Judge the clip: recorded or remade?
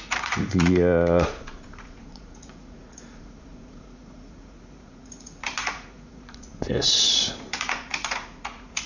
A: remade